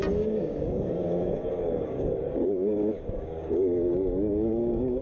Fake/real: fake